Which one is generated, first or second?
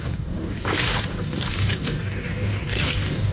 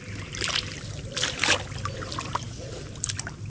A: first